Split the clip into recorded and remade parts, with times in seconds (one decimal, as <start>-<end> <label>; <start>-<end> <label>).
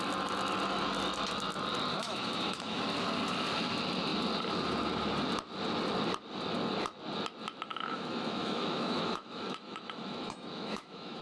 0.0-1.9 recorded; 1.9-2.8 remade; 2.8-7.7 recorded; 7.7-11.2 remade